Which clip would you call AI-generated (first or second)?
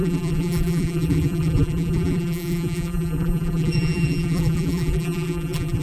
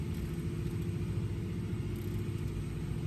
first